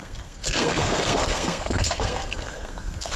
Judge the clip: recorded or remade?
remade